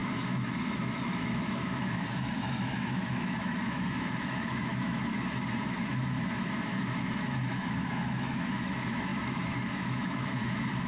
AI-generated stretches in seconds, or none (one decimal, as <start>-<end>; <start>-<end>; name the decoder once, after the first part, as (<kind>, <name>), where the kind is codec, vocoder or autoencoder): 0.0-10.9 (autoencoder, DAC-VAE)